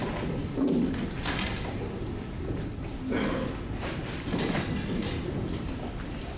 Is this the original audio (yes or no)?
yes